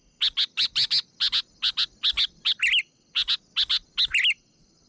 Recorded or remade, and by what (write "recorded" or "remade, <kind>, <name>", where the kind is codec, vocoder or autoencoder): recorded